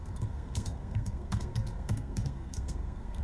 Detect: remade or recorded remade